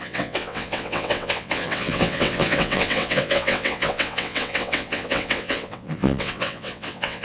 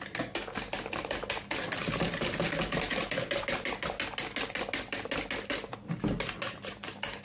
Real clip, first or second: second